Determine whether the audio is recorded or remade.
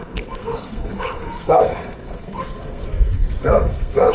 remade